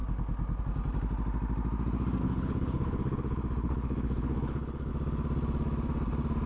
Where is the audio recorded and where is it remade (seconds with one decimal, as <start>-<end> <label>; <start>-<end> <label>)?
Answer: 0.0-2.2 recorded; 2.2-4.9 remade; 4.9-6.5 recorded